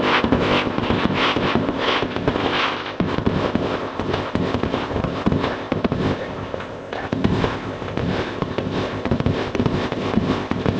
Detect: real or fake fake